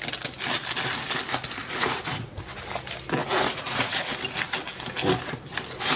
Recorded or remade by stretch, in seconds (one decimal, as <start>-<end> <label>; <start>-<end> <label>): 0.0-1.6 recorded; 1.6-2.4 remade; 2.4-3.2 recorded; 3.2-4.1 remade; 4.1-6.0 recorded